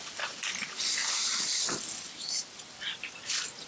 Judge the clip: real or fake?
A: real